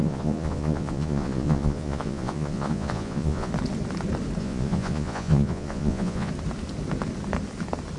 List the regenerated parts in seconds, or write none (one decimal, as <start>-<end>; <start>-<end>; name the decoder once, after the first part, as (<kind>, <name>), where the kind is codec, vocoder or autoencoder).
0.0-3.5 (vocoder, Vocos); 4.4-6.3